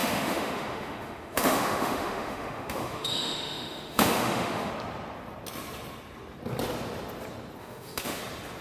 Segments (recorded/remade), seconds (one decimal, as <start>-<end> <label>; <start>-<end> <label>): 0.0-4.7 remade; 4.7-7.6 recorded; 7.6-8.2 remade; 8.2-8.6 recorded